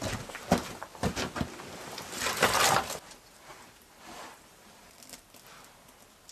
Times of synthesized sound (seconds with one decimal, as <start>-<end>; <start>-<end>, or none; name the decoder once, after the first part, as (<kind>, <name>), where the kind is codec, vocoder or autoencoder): 0.9-1.4 (vocoder, BigVGAN v2); 3.5-4.8